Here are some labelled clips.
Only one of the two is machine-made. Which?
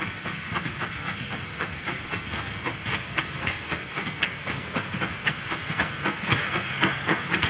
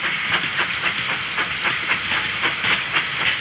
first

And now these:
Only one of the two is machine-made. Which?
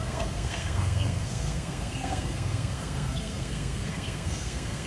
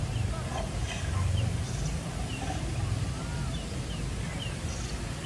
first